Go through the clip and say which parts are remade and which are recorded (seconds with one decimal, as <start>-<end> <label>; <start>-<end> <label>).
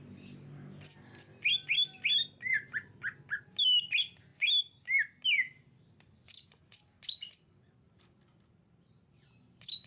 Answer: 0.0-9.9 recorded